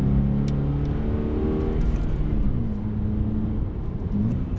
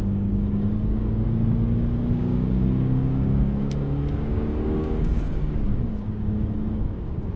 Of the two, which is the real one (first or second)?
first